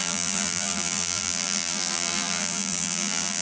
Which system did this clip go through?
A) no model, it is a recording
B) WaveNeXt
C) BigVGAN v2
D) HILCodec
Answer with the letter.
C